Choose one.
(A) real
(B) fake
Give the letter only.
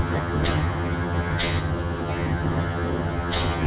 B